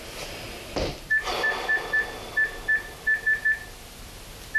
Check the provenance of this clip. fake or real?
real